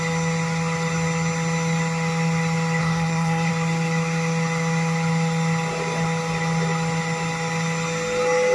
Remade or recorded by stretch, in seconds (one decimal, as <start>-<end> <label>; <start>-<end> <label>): 0.0-2.8 recorded; 2.8-3.5 remade; 3.5-8.5 recorded